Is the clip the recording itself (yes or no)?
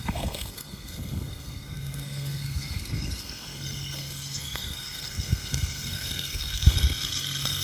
no